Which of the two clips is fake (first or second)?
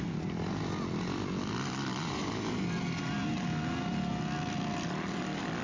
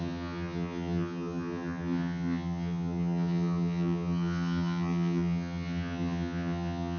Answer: second